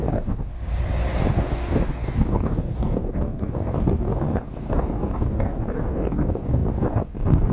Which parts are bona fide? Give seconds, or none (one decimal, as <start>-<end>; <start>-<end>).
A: 0.5-1.3